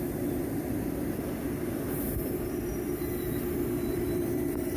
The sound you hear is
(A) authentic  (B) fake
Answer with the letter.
B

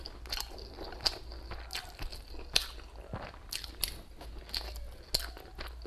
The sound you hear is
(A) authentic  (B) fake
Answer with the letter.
A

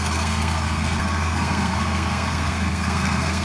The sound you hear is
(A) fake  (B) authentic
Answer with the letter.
A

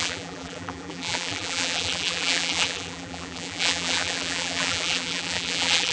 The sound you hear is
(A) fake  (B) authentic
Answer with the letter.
A